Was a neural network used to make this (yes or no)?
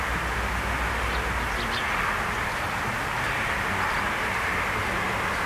no